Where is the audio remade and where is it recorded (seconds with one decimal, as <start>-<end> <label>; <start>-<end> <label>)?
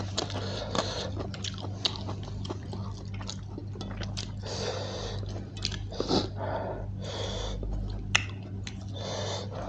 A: 0.0-9.7 recorded